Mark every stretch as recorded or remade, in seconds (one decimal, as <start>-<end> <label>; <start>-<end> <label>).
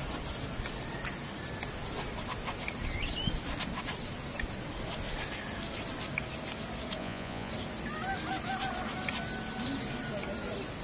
0.0-7.0 recorded; 7.0-7.5 remade; 7.5-10.8 recorded